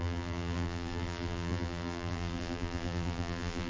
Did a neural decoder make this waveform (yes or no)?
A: yes